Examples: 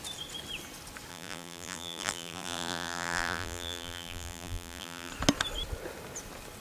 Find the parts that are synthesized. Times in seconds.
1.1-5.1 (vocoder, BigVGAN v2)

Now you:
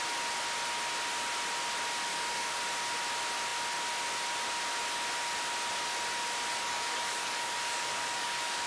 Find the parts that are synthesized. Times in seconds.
2.1-2.6 (codec, DAC); 6.5-8.7

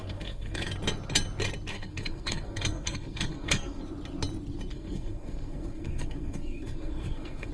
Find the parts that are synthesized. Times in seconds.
0.0-0.7 (codec, SNAC); 1.7-3.8; 4.7-7.5